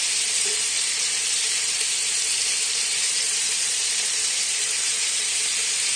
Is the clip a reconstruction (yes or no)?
yes